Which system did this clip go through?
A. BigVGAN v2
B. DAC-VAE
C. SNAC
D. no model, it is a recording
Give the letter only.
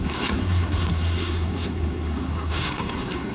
C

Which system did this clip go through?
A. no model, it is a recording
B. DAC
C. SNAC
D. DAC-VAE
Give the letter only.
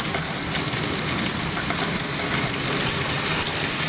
A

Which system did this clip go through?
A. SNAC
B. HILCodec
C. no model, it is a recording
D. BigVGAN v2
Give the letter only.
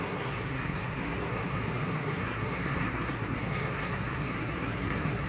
A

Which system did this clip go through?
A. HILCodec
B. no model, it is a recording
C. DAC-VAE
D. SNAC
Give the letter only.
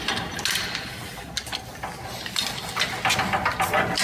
B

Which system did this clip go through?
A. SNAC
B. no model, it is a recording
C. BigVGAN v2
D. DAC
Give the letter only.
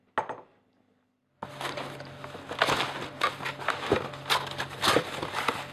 B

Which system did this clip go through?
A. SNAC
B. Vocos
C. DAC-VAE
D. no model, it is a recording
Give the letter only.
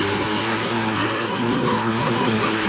A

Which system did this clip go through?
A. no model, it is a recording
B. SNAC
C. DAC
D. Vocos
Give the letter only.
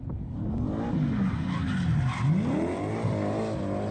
A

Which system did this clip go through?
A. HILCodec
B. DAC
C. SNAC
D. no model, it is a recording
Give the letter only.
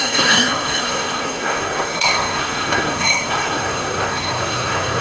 C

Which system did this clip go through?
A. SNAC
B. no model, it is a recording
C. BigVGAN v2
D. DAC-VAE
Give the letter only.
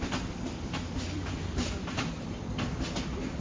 B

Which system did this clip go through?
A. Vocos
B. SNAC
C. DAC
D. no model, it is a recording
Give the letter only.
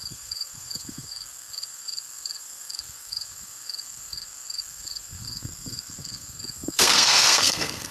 B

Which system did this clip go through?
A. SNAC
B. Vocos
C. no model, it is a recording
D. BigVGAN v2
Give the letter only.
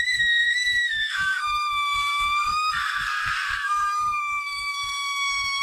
A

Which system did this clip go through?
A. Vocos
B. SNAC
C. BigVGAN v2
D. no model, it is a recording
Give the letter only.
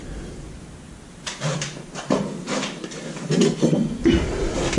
D